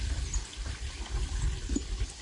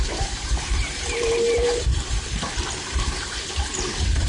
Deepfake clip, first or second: second